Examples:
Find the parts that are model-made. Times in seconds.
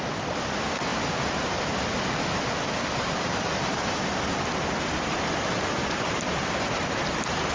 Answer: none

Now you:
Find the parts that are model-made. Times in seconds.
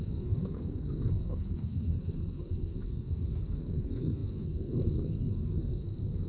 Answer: 0.0-6.3 (codec, SNAC)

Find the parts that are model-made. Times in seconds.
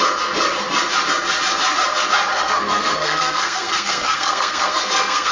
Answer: 2.3-5.3 (codec, SNAC)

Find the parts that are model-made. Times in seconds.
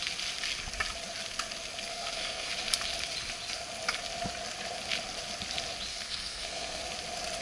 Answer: 1.9-2.5 (codec, SNAC); 5.9-6.8